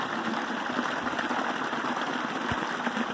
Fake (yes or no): no